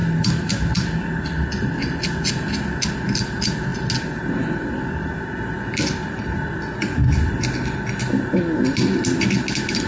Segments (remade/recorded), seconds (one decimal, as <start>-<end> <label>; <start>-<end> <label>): 0.0-9.9 recorded